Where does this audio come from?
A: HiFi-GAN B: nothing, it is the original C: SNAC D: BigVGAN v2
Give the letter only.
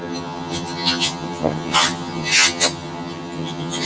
A